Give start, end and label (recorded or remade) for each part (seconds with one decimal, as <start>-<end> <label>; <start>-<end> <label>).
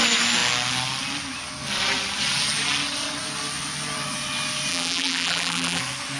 0.0-4.7 recorded; 4.7-5.8 remade; 5.8-6.2 recorded